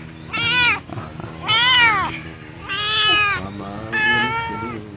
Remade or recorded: recorded